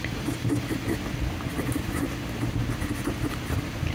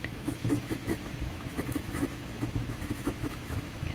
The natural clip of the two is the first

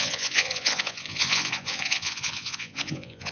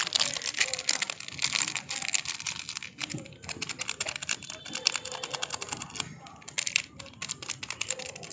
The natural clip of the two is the second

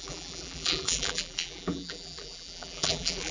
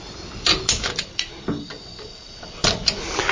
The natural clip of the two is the second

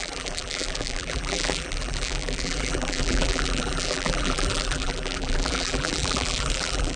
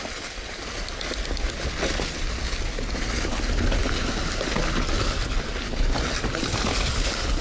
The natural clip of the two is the second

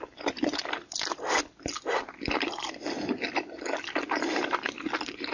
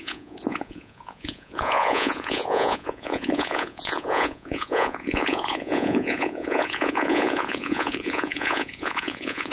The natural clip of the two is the first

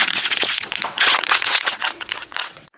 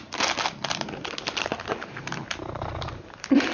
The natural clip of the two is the second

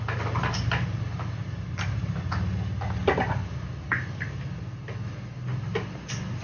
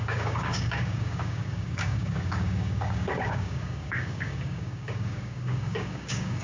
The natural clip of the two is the first